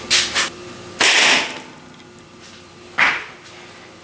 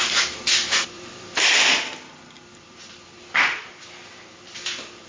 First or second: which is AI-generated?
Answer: second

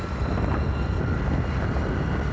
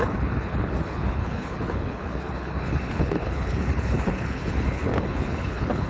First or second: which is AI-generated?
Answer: second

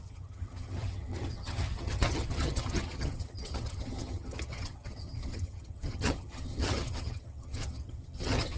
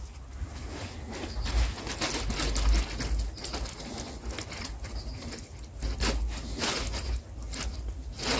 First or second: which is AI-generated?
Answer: first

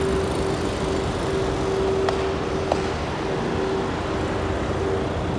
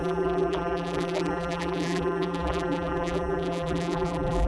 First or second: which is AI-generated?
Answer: second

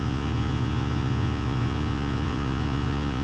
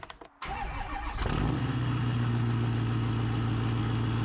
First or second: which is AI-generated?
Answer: first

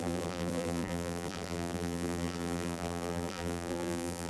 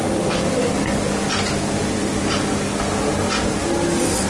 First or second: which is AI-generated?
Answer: first